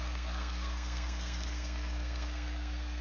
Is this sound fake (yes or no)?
yes